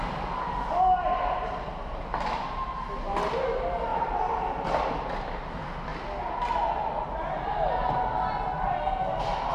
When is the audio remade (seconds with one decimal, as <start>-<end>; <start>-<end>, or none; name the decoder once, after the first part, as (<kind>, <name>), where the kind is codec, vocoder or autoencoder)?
3.9-4.8 (vocoder, BigVGAN v2)